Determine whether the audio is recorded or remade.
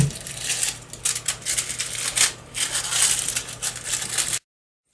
recorded